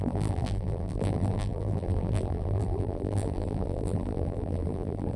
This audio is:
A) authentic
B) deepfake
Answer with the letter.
B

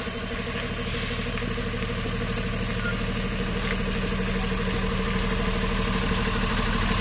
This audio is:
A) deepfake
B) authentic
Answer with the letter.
B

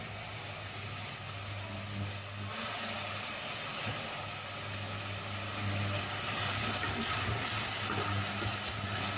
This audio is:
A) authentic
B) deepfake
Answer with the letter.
A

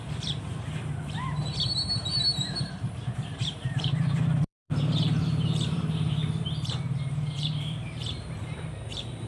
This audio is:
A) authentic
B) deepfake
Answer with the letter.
B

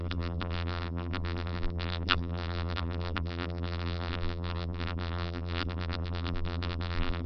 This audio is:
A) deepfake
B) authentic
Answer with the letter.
A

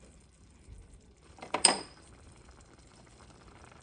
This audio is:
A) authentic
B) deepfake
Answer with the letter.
B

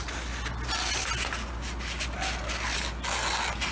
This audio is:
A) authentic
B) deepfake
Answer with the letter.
A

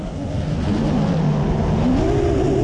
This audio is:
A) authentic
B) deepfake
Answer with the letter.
A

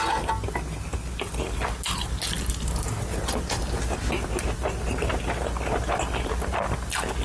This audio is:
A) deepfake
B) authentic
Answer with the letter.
B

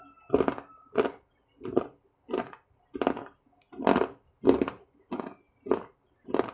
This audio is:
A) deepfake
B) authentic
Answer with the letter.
B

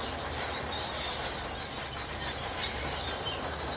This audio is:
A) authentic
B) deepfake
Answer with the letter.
B